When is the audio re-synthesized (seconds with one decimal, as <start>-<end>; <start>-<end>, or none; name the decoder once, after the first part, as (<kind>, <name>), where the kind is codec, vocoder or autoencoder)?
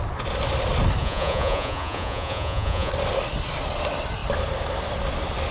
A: 1.0-2.9 (vocoder, Vocos)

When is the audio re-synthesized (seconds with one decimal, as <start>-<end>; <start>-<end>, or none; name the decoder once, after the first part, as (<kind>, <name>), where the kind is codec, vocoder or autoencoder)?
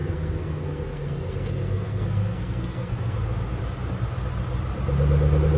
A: 0.0-3.4 (codec, SNAC)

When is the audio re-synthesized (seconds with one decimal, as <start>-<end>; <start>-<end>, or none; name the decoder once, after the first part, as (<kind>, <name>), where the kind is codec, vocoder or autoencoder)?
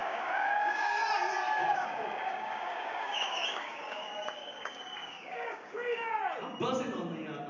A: 0.0-1.0 (codec, DAC); 1.6-6.1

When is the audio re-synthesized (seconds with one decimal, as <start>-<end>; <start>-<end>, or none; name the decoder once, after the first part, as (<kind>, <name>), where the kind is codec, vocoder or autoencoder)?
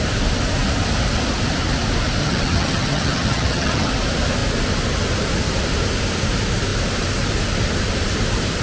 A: 2.2-3.9 (vocoder, HiFi-GAN)